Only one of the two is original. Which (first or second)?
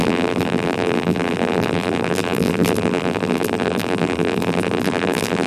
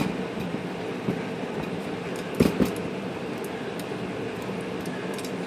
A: second